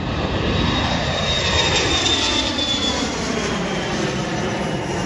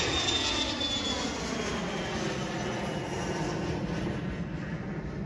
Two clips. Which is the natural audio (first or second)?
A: second